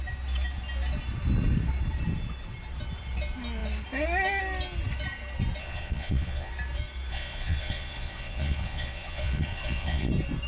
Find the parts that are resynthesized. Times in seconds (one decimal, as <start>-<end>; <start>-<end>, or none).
5.6-6.5; 7.1-10.1